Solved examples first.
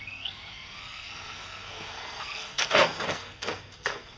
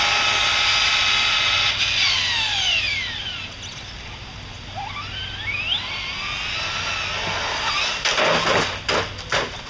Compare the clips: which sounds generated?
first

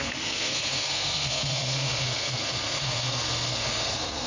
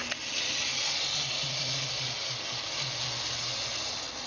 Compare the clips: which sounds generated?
first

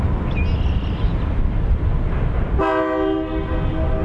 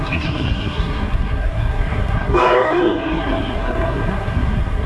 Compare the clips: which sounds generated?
second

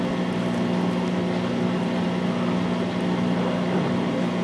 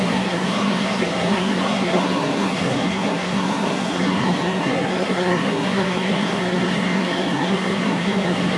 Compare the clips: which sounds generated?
second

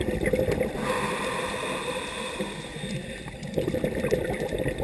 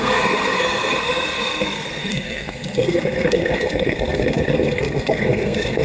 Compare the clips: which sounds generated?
second